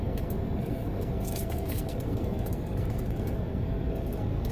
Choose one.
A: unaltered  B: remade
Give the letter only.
B